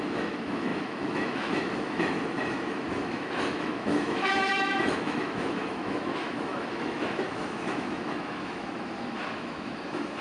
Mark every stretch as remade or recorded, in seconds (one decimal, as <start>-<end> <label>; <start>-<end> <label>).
0.0-10.2 remade